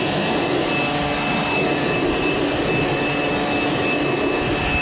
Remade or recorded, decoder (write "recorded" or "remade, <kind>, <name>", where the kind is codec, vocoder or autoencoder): recorded